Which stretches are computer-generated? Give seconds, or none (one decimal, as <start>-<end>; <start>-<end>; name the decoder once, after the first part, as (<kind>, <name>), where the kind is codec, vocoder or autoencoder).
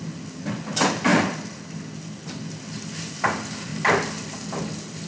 none